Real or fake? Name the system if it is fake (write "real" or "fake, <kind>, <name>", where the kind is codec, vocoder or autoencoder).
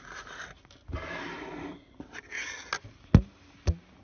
real